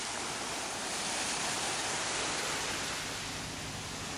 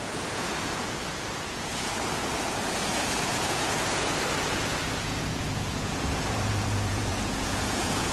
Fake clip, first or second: second